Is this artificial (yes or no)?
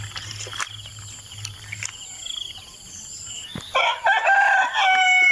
no